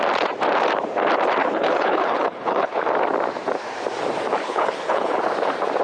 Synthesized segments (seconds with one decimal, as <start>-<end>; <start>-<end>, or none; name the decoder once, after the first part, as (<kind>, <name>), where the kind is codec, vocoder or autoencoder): 1.4-2.8 (codec, HILCodec); 4.4-5.2